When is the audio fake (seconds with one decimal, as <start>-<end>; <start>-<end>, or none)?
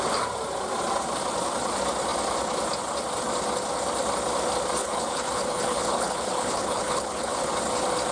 4.8-7.5